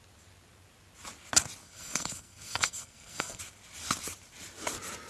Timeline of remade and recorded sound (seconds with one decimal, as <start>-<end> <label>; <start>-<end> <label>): 0.0-1.6 recorded; 1.6-3.4 remade; 3.4-5.1 recorded